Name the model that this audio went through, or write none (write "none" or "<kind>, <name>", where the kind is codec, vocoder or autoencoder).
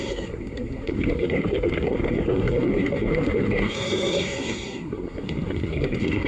codec, SNAC